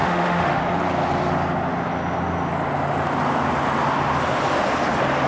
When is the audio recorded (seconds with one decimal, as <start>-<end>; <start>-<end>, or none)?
0.6-5.3